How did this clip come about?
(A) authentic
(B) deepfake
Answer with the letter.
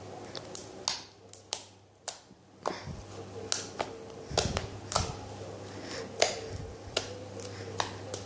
A